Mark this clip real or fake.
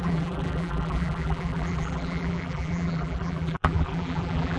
fake